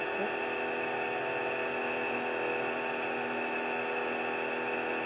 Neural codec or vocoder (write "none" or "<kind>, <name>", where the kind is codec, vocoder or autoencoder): none